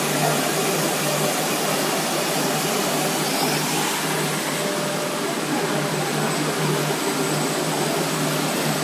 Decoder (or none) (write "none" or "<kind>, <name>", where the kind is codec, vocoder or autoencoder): none